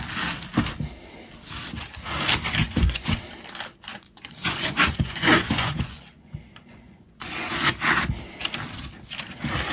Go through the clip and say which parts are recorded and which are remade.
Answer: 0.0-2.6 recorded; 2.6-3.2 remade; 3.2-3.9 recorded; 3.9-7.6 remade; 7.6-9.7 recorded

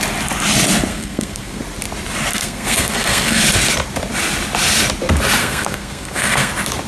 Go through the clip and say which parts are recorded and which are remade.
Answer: 0.0-0.9 recorded; 0.9-1.6 remade; 1.6-2.3 recorded; 2.3-3.4 remade; 3.4-5.4 recorded; 5.4-6.5 remade; 6.5-6.9 recorded

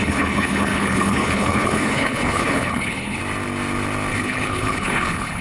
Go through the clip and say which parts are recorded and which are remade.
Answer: 0.0-3.2 remade; 3.2-4.1 recorded; 4.1-5.4 remade

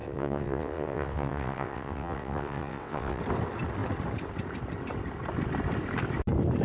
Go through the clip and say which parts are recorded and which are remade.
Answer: 0.0-3.2 remade; 3.2-6.6 recorded

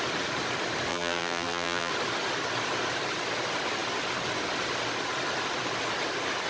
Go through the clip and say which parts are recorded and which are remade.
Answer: 0.0-0.9 recorded; 0.9-1.9 remade; 1.9-6.5 recorded

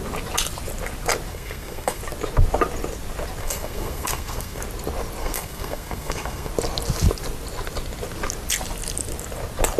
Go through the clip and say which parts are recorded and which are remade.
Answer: 0.0-1.3 recorded; 1.3-2.0 remade; 2.0-3.4 recorded; 3.4-4.6 remade; 4.6-5.2 recorded; 5.2-6.5 remade; 6.5-9.8 recorded

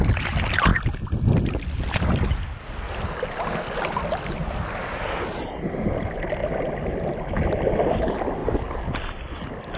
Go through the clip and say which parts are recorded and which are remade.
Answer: 0.0-9.8 recorded

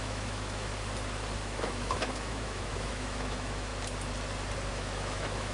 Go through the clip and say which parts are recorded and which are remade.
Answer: 0.0-0.7 remade; 0.7-1.4 recorded; 1.4-3.7 remade; 3.7-4.7 recorded; 4.7-5.5 remade